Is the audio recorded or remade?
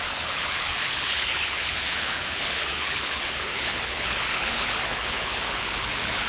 remade